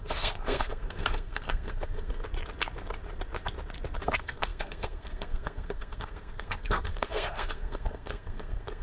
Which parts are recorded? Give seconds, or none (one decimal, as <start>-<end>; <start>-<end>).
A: 2.2-4.0

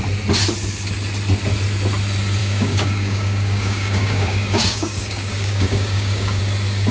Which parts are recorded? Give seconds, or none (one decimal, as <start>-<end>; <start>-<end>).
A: 0.0-2.4; 6.4-6.9

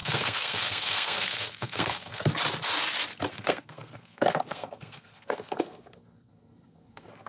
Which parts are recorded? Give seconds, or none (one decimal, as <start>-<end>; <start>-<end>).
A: 2.3-3.3